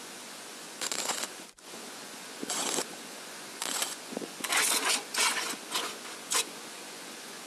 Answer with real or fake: fake